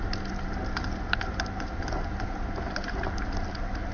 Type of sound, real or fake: real